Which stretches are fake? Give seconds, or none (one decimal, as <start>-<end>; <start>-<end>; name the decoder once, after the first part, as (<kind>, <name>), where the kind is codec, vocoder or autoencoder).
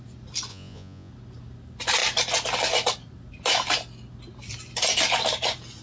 0.5-1.1 (vocoder, Vocos)